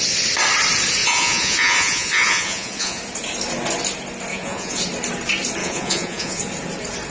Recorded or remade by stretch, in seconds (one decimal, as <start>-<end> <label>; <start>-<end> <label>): 0.0-1.0 recorded; 1.0-3.0 remade; 3.0-4.3 recorded; 4.3-4.8 remade; 4.8-5.6 recorded; 5.6-6.4 remade; 6.4-7.1 recorded